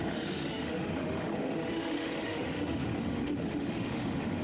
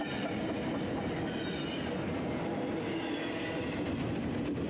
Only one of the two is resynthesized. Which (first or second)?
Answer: first